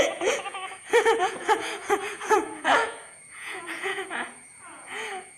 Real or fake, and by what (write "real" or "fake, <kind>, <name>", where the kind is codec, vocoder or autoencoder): fake, vocoder, Vocos